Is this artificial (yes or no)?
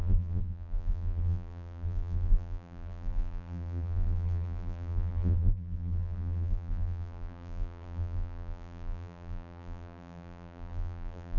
yes